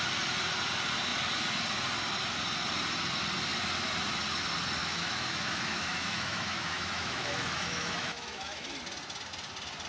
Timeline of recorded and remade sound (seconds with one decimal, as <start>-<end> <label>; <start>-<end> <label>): 0.0-4.8 recorded; 4.8-8.8 remade; 8.8-9.9 recorded